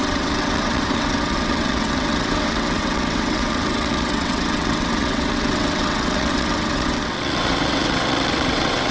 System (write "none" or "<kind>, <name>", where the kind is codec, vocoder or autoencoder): vocoder, WaveNeXt